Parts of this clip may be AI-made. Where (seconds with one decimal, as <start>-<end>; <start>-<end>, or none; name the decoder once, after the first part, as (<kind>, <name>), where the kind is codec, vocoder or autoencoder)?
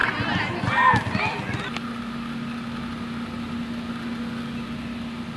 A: none